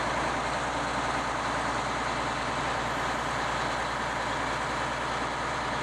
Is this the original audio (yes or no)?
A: yes